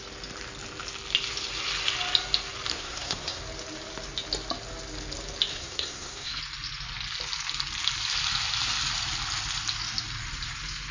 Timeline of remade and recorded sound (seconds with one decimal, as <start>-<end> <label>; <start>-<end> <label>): 0.0-2.7 recorded; 2.7-3.4 remade; 3.4-5.5 recorded; 5.5-6.4 remade; 6.4-10.9 recorded